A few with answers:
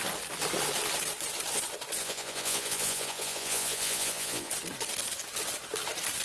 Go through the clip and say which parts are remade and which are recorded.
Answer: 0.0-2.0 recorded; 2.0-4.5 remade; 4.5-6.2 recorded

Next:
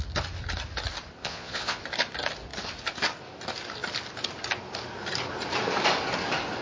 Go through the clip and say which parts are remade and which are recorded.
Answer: 0.0-1.2 recorded; 1.2-1.8 remade; 1.8-6.6 recorded

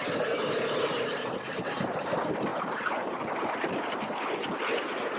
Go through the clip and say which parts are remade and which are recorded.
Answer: 0.0-5.2 recorded

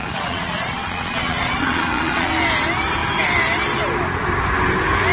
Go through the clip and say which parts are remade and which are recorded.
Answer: 0.0-2.3 remade; 2.3-5.1 recorded

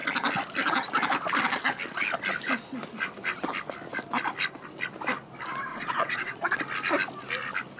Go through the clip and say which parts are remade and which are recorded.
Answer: 0.0-5.7 recorded; 5.7-6.6 remade; 6.6-7.8 recorded

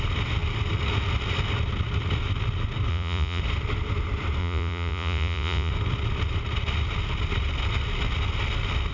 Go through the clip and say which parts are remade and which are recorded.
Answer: 0.0-2.9 recorded; 2.9-3.4 remade; 3.4-4.4 recorded; 4.4-5.7 remade; 5.7-8.9 recorded

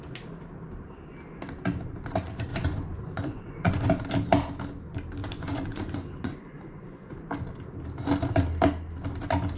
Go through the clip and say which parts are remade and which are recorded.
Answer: 0.0-2.5 recorded; 2.5-3.9 remade; 3.9-5.2 recorded; 5.2-7.2 remade; 7.2-9.6 recorded